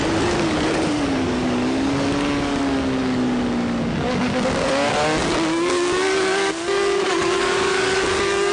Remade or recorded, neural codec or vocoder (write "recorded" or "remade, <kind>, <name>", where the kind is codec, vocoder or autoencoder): remade, codec, DAC